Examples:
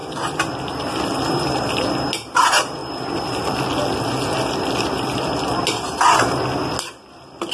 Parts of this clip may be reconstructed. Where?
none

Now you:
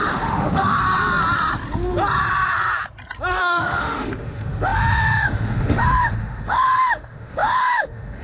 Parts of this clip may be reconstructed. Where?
0.0-0.8 (autoencoder, DAC-VAE); 3.4-8.2